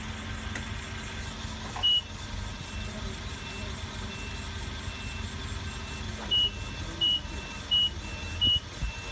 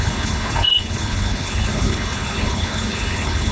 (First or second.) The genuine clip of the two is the first